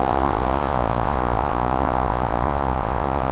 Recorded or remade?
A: remade